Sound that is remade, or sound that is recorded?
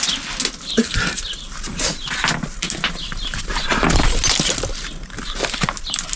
recorded